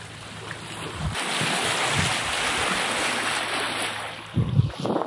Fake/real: real